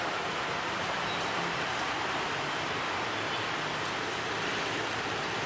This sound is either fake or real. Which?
fake